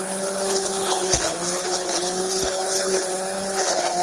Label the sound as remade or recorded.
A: remade